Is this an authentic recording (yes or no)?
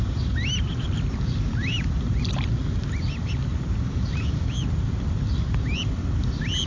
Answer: no